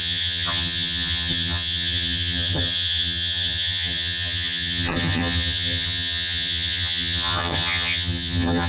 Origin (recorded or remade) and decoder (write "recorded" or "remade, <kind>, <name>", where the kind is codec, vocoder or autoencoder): remade, vocoder, HiFi-GAN